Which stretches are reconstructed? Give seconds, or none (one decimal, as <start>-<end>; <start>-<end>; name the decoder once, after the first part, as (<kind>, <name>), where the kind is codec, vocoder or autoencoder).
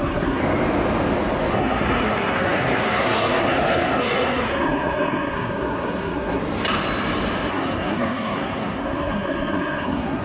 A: 0.0-0.4 (codec, SNAC); 1.5-6.4; 7.5-10.2